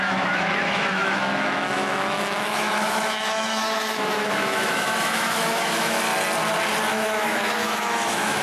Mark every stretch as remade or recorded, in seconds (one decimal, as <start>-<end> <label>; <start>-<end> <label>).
0.0-6.1 remade; 6.1-6.9 recorded; 6.9-8.4 remade